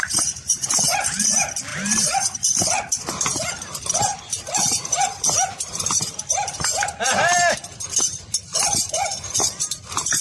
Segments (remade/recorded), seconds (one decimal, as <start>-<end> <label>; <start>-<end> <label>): 0.0-0.7 remade; 0.7-1.7 recorded; 1.7-2.4 remade; 2.4-2.9 recorded; 2.9-7.2 remade; 7.2-8.5 recorded; 8.5-10.2 remade